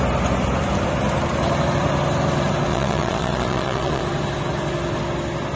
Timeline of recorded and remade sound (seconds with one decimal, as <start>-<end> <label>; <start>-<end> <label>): 0.0-2.7 recorded; 2.7-4.0 remade; 4.0-5.6 recorded